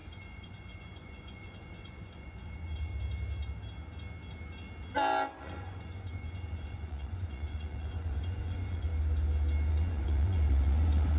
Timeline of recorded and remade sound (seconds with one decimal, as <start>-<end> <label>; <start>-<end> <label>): 0.0-2.9 remade; 2.9-5.4 recorded; 5.4-8.9 remade; 8.9-9.7 recorded; 9.7-11.2 remade